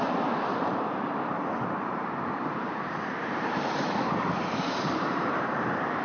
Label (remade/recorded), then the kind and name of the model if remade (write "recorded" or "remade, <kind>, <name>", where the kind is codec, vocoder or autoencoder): remade, vocoder, BigVGAN v2